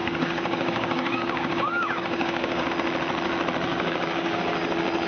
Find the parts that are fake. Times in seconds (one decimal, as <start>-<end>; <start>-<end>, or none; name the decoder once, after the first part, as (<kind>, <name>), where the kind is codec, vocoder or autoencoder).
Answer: 0.0-2.7 (codec, DAC); 3.7-4.4